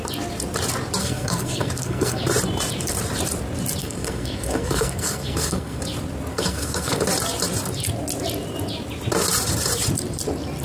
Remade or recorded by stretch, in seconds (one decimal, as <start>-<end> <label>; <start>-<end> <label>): 0.0-1.0 recorded; 1.0-2.2 remade; 2.2-3.8 recorded; 3.8-5.8 remade; 5.8-6.3 recorded; 6.3-7.0 remade; 7.0-10.6 recorded